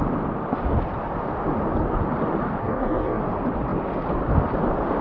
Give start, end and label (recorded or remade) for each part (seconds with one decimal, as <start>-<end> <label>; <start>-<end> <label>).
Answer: 0.0-2.6 recorded; 2.6-3.2 remade; 3.2-5.0 recorded

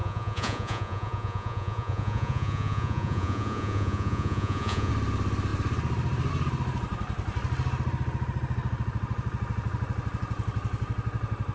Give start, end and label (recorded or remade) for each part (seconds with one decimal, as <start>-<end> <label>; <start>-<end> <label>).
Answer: 0.0-4.9 remade; 4.9-11.5 recorded

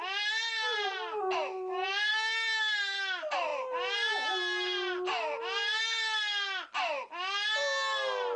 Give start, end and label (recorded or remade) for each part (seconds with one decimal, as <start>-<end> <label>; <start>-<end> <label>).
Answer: 0.0-2.1 recorded; 2.1-2.6 remade; 2.6-8.4 recorded

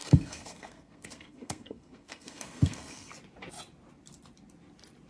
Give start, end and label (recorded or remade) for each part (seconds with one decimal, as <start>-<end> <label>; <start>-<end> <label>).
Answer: 0.0-3.1 remade; 3.1-5.1 recorded

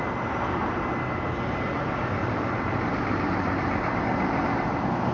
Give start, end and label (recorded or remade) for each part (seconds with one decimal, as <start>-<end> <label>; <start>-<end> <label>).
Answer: 0.0-2.2 recorded; 2.2-4.0 remade; 4.0-5.1 recorded

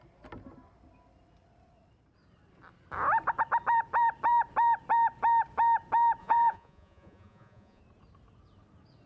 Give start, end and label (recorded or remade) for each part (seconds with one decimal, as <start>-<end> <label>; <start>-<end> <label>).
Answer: 0.0-6.2 recorded; 6.2-7.8 remade; 7.8-9.1 recorded

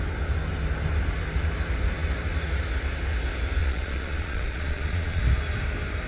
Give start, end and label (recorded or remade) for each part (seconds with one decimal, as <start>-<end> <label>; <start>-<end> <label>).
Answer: 0.0-3.6 recorded; 3.6-5.2 remade; 5.2-6.1 recorded